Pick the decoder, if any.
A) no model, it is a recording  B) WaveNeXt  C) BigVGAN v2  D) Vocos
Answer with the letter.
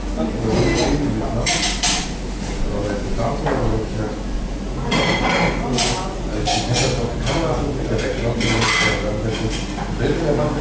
A